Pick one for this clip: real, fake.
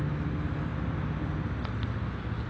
real